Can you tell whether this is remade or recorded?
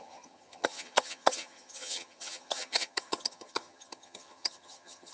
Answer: remade